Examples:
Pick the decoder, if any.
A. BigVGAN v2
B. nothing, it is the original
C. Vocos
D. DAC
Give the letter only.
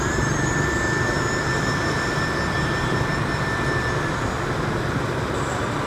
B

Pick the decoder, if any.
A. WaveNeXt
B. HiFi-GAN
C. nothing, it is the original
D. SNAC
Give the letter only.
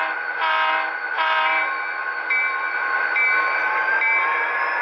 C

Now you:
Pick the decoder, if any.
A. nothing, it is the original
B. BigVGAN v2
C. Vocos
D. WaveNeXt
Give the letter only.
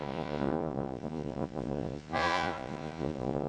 C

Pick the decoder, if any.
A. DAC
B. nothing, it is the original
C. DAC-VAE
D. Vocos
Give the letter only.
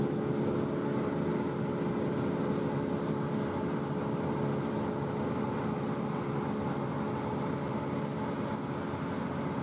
B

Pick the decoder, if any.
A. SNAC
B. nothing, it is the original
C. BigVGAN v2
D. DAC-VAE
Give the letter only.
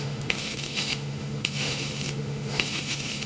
D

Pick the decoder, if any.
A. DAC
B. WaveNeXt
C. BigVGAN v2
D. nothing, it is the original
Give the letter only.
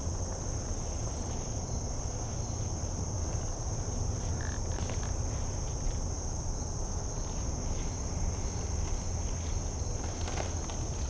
D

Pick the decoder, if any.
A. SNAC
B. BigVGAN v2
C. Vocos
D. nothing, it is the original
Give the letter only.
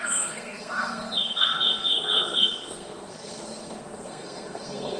A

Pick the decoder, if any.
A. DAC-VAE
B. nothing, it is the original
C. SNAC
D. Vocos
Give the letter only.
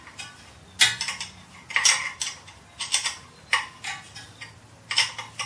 B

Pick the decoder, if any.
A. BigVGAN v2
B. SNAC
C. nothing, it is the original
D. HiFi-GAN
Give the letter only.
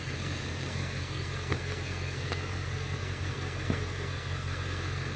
B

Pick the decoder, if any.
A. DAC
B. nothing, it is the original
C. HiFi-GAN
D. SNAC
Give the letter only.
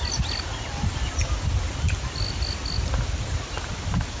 B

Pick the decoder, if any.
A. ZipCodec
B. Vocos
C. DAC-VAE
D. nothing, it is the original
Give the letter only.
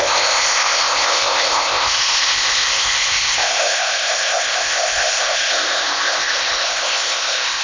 A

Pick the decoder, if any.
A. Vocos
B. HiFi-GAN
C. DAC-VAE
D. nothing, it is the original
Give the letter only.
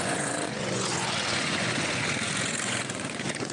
A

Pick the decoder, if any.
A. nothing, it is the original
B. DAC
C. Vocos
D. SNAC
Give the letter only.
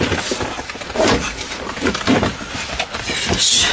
A